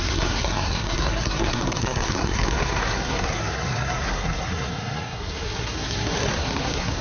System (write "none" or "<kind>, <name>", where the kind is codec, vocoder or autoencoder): codec, SNAC